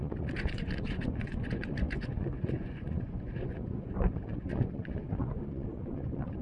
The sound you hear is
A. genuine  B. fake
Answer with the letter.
B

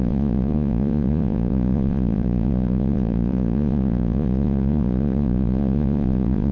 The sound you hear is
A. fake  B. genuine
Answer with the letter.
A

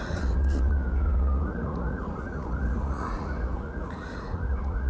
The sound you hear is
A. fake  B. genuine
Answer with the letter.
A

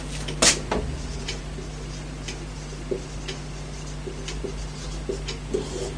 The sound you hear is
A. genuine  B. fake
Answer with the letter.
A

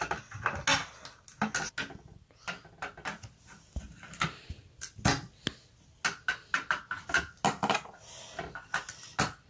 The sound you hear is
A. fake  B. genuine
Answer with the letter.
B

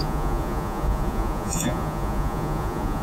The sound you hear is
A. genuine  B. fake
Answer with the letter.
B